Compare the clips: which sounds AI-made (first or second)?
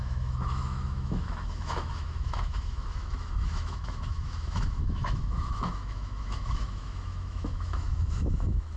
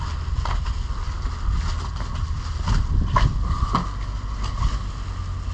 first